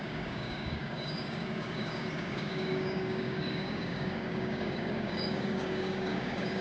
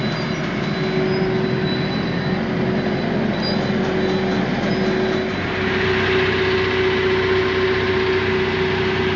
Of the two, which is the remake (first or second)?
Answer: first